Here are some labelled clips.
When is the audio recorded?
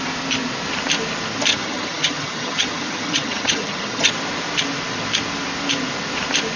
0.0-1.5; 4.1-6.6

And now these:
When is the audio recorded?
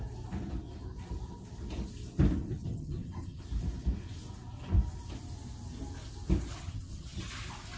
0.0-2.4; 3.4-6.6; 7.2-7.8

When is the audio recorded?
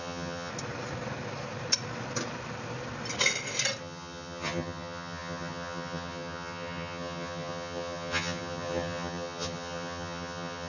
0.5-3.8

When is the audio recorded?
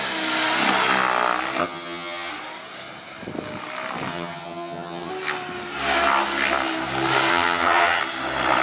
0.0-1.6; 2.3-4.1; 5.1-7.3; 8.0-8.6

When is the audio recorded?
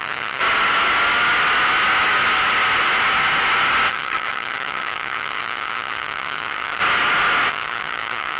0.4-3.9; 6.8-7.5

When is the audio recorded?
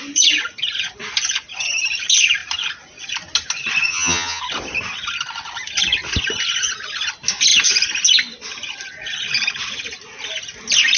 0.0-3.9; 4.4-11.0